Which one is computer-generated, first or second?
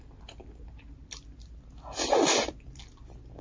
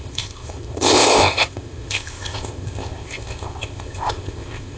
second